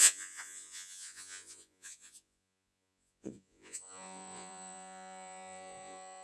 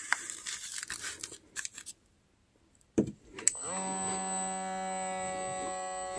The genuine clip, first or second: second